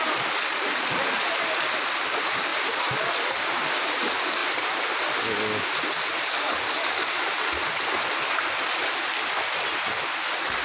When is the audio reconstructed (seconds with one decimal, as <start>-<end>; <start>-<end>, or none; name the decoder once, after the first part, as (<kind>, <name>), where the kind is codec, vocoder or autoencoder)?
none